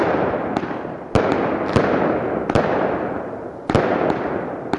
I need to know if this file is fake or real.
real